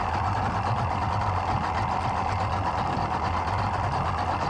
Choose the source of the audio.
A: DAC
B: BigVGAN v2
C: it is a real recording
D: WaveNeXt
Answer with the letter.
C